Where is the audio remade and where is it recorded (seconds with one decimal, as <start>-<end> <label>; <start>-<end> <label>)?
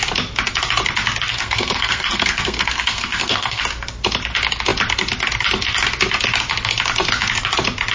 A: 0.0-1.3 recorded; 1.3-3.6 remade; 3.6-7.9 recorded